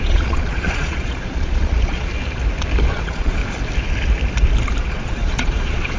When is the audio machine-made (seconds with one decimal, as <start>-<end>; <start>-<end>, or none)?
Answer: 0.0-2.1; 2.9-3.4; 4.8-6.0

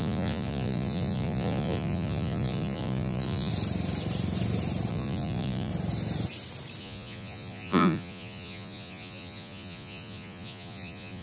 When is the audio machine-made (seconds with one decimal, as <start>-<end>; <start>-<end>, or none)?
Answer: 0.0-3.5; 4.9-5.7; 6.8-11.2

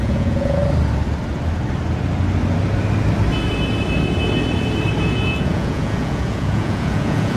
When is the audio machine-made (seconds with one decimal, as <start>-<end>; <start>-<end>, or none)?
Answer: 0.0-0.6; 5.0-7.4